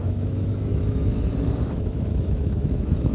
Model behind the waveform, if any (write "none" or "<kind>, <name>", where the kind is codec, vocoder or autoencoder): autoencoder, DAC-VAE